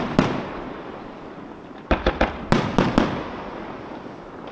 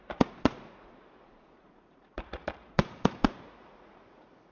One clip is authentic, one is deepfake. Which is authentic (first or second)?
first